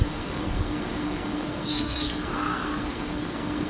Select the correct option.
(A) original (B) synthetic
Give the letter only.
B